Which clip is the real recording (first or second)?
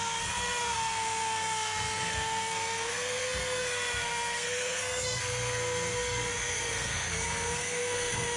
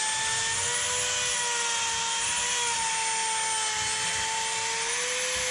second